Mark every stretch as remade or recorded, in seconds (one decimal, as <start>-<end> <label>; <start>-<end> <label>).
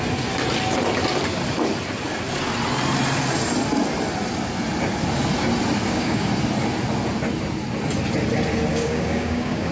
0.0-5.8 recorded; 5.8-6.3 remade; 6.3-8.7 recorded; 8.7-9.7 remade